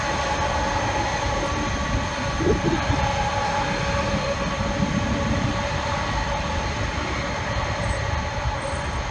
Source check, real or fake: real